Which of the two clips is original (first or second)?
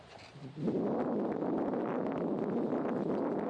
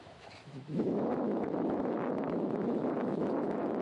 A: first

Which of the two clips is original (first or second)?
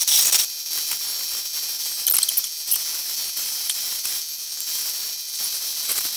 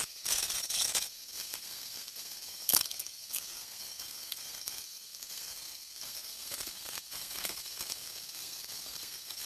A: first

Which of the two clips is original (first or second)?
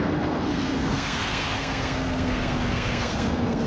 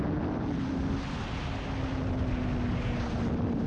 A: second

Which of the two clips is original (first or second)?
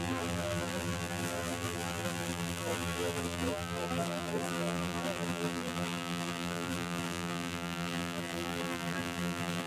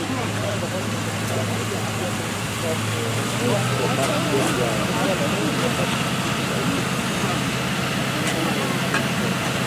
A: second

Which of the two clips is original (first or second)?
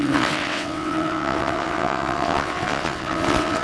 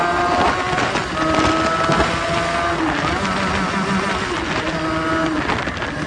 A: second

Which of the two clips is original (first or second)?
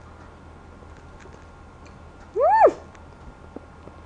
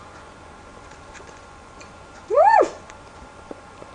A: first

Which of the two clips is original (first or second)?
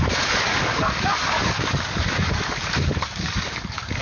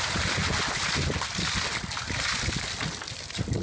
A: second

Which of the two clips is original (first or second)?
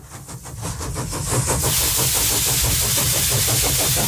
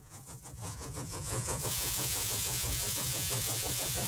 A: first